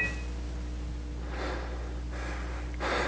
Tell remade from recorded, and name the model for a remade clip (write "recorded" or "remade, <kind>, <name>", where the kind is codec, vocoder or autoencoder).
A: recorded